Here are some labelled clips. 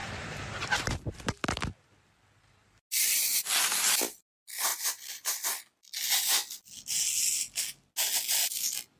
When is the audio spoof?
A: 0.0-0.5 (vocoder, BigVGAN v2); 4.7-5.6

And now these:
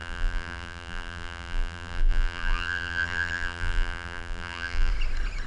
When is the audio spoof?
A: 0.0-4.9 (vocoder, BigVGAN v2)

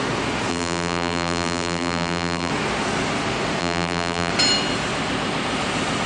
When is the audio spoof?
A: 0.5-2.5 (vocoder, BigVGAN v2); 3.6-4.3

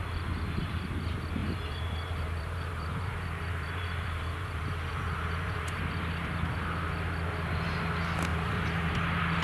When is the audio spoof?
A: 1.4-5.8 (vocoder, BigVGAN v2); 8.3-8.9

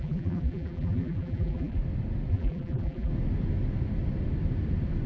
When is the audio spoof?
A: 0.0-1.8 (vocoder, BigVGAN v2); 2.3-3.1

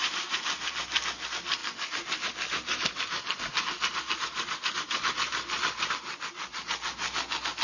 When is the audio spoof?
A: 0.0-0.8 (vocoder, BigVGAN v2); 1.6-5.9

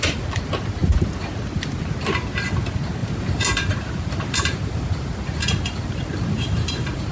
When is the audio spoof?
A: 3.0-7.1 (vocoder, BigVGAN v2)

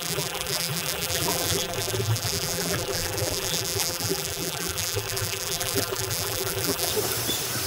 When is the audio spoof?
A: 0.0-6.9 (vocoder, BigVGAN v2)